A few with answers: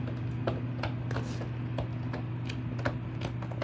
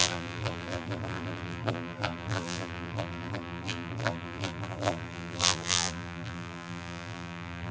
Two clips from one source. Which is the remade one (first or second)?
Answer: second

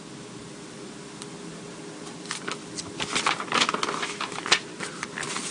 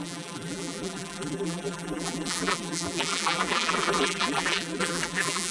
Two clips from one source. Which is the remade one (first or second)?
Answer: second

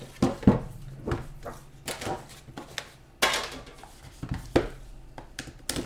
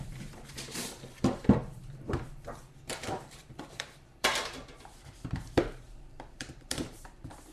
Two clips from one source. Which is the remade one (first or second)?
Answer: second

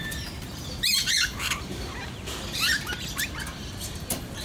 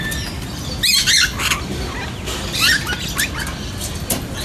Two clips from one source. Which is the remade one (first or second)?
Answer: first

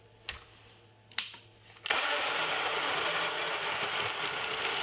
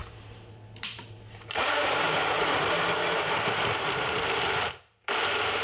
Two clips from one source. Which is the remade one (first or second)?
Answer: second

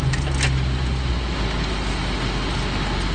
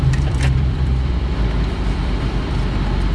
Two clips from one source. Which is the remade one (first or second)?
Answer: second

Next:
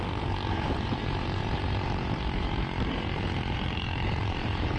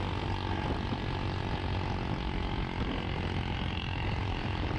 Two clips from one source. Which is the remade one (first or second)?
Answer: first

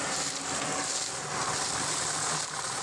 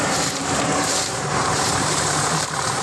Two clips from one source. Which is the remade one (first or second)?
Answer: second